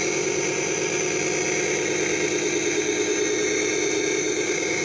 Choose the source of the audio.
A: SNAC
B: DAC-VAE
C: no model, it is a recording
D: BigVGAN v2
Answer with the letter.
C